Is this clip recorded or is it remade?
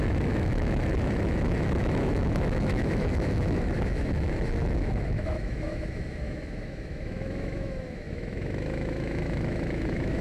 remade